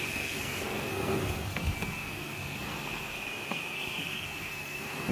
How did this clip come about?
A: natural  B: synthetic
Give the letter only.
B